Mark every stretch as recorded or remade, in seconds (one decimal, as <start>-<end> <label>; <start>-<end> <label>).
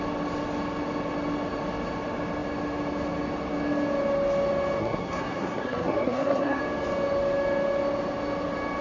0.0-4.8 recorded; 4.8-6.6 remade; 6.6-8.8 recorded